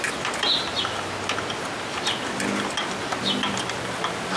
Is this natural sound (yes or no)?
yes